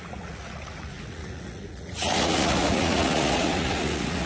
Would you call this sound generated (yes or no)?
yes